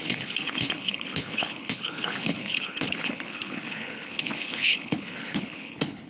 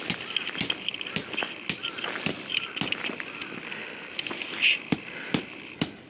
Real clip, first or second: second